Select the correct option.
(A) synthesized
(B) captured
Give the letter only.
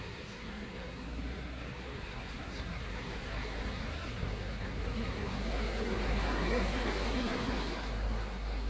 A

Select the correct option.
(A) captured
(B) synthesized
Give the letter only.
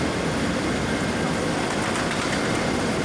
A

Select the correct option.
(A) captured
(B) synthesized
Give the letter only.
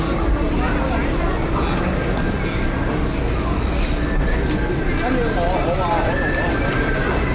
A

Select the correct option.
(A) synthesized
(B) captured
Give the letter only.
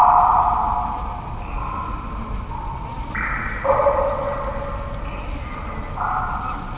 B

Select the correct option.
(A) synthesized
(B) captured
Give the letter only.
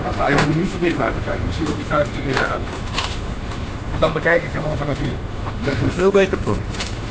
A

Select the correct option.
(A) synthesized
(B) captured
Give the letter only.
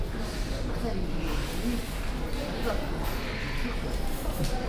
B